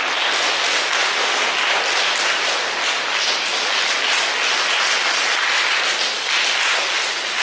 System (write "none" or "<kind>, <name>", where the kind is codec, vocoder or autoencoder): none